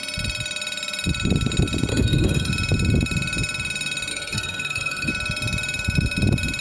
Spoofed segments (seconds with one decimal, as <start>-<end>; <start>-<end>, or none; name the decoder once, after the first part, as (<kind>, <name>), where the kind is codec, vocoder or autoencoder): 1.9-2.5 (codec, SNAC); 4.1-5.1